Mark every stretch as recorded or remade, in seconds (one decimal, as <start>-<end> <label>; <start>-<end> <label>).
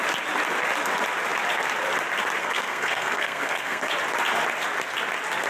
0.0-2.4 recorded; 2.4-3.9 remade; 3.9-5.5 recorded